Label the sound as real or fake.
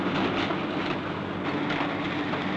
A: real